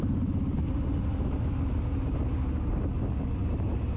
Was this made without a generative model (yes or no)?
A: yes